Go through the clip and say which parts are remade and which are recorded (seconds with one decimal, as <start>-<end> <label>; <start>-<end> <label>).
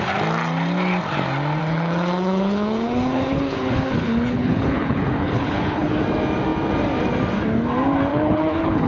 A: 0.0-1.6 recorded; 1.6-6.0 remade; 6.0-8.1 recorded; 8.1-8.9 remade